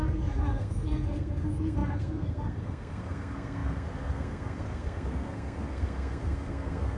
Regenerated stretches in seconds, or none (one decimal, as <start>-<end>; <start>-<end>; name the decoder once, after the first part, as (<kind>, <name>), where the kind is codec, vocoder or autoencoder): 0.0-7.0 (codec, SNAC)